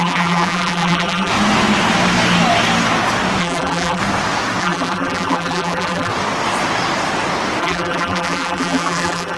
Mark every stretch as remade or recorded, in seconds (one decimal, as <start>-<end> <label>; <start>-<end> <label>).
0.0-1.3 remade; 1.3-3.4 recorded; 3.4-4.0 remade; 4.0-4.6 recorded; 4.6-6.1 remade; 6.1-7.6 recorded; 7.6-9.4 remade